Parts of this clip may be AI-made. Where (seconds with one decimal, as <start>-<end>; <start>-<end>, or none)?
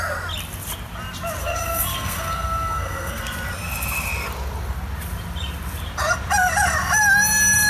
1.4-3.2